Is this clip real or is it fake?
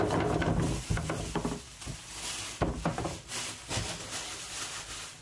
real